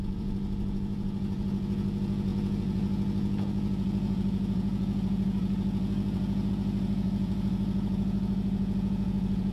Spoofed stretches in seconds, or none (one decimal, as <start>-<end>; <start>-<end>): 0.0-9.5